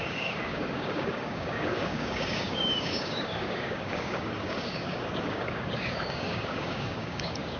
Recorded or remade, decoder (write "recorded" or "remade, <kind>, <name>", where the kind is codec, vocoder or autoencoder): remade, codec, DAC